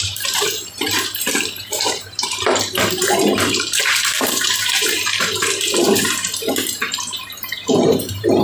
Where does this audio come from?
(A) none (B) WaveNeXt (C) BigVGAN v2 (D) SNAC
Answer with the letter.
C